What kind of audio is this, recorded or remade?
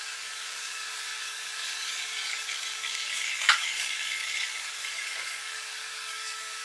remade